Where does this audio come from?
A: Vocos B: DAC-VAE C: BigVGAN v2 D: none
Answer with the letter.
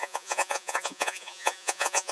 A